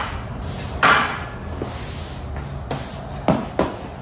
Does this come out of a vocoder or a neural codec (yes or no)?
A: no